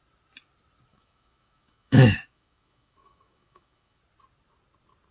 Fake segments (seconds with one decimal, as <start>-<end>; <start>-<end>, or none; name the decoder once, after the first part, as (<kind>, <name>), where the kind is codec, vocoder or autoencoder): 0.9-4.0 (autoencoder, DAC-VAE)